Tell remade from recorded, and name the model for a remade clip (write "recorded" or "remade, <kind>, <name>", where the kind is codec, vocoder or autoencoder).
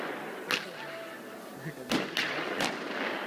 recorded